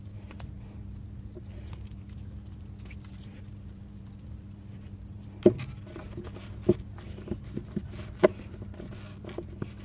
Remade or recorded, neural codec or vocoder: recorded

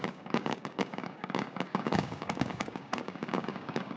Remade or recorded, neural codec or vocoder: remade, codec, DAC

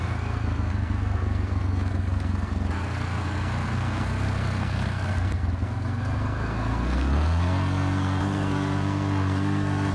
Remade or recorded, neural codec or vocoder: remade, codec, SNAC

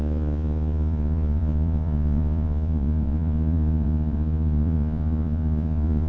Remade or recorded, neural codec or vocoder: remade, vocoder, Vocos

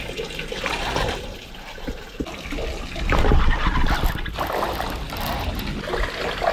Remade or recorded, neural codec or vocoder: recorded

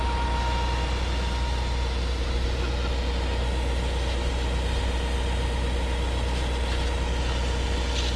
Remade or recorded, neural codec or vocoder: recorded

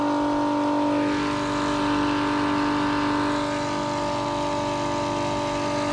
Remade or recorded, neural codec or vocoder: recorded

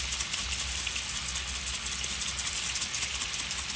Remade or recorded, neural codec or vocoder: recorded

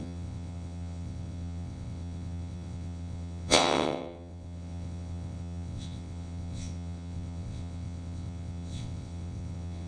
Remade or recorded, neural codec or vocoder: remade, vocoder, WaveNeXt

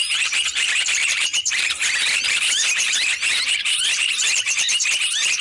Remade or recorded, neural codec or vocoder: remade, vocoder, BigVGAN v2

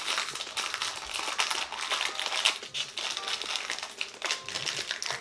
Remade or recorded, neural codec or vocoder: recorded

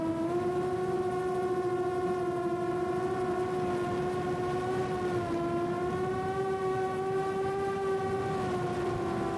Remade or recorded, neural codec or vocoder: recorded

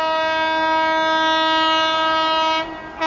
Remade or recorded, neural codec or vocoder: recorded